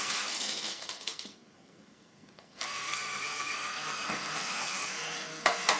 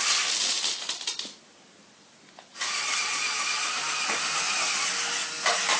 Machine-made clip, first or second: first